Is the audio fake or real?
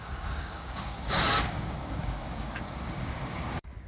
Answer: fake